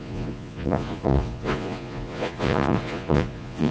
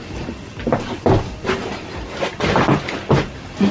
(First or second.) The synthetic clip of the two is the first